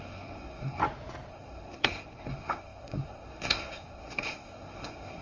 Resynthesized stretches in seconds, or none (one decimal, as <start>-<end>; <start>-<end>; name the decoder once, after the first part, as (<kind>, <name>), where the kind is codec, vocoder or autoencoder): 0.0-0.8 (codec, SNAC); 1.3-5.2

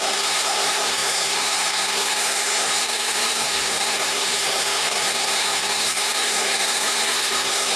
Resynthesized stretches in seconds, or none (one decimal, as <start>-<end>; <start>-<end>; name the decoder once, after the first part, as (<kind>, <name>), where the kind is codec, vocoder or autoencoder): 0.0-7.8 (codec, SNAC)

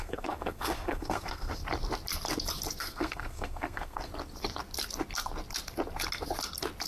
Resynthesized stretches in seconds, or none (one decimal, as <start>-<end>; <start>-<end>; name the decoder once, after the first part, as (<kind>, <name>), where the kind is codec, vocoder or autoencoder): 0.0-1.6 (codec, SNAC); 2.8-4.1